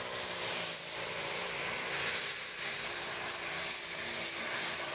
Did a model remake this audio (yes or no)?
no